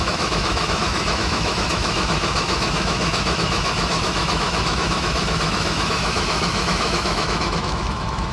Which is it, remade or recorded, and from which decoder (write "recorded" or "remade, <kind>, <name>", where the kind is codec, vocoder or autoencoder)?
remade, autoencoder, DAC-VAE